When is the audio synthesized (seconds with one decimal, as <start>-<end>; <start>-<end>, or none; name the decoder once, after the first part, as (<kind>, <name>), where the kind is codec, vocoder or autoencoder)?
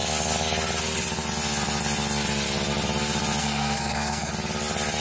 3.4-4.3 (codec, SNAC)